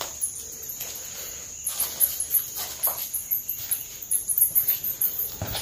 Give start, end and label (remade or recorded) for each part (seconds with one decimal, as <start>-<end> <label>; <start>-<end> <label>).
0.0-3.9 recorded; 3.9-5.6 remade